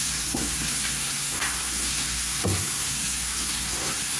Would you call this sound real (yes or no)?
no